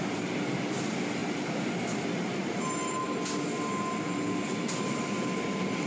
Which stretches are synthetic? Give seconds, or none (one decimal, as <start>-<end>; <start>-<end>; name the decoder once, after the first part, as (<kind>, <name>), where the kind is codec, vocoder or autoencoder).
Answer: none